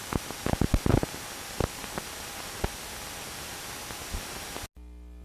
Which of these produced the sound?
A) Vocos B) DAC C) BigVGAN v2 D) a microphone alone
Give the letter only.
D